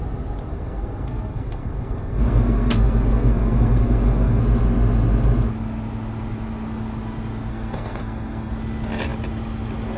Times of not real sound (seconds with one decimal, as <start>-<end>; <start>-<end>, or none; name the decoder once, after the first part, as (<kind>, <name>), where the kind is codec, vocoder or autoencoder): 0.5-4.4 (codec, SNAC); 7.5-8.5